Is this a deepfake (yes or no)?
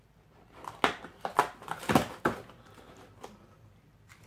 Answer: no